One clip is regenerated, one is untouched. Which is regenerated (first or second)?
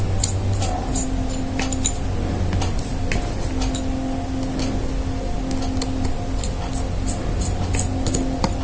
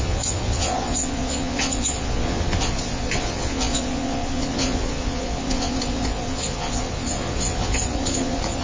second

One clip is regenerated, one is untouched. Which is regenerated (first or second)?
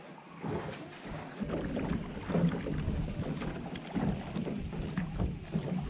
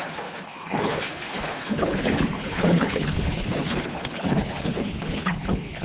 second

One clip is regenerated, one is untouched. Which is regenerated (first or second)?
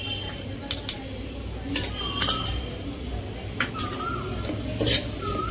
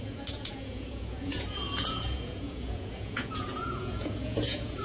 second